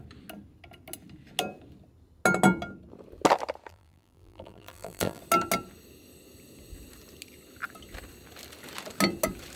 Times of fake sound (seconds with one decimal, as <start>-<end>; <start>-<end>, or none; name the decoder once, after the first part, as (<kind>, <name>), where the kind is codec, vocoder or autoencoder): 3.7-5.2 (vocoder, BigVGAN v2)